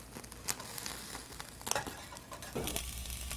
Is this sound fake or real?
real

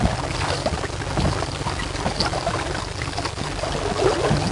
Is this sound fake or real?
real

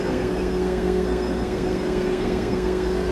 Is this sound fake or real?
fake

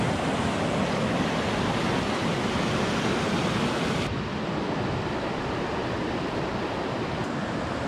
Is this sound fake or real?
real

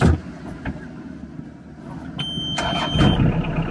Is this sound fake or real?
real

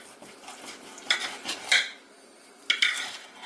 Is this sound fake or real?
real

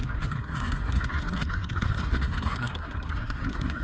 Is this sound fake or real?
fake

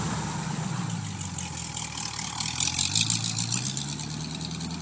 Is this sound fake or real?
real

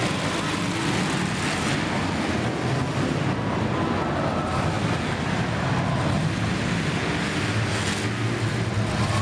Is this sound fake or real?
real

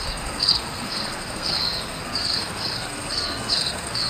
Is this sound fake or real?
fake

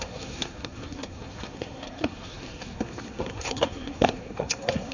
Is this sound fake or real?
fake